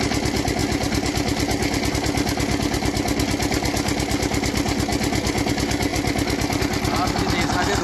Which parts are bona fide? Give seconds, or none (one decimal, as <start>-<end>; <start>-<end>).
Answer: 0.0-0.6; 1.9-7.8